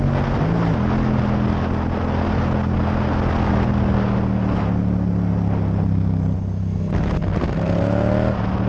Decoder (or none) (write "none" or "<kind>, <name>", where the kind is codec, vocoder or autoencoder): none